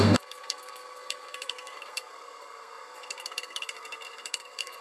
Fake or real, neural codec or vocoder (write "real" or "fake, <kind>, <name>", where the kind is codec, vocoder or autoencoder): fake, codec, SNAC